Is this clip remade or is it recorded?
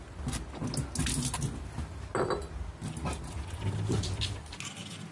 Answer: recorded